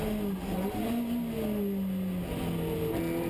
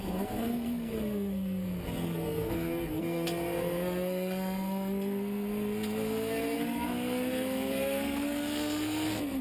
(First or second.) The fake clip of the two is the second